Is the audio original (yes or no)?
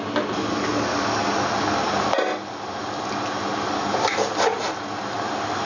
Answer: yes